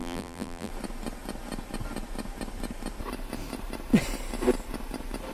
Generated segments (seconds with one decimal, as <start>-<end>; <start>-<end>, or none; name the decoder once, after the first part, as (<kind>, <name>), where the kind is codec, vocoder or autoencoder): 0.0-0.7 (vocoder, BigVGAN v2)